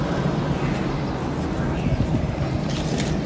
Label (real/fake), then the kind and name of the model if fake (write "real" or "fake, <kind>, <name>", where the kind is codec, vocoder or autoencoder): real